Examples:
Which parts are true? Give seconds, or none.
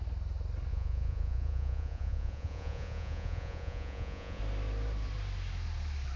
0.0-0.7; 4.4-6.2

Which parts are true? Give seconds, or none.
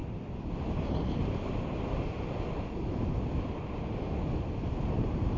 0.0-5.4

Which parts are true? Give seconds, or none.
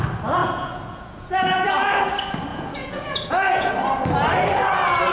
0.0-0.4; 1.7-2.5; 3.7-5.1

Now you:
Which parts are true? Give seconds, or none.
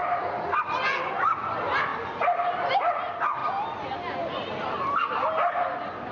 0.0-6.1